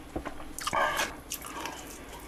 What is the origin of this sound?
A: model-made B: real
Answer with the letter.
B